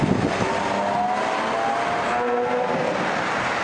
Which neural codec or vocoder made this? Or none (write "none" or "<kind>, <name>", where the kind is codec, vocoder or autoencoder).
none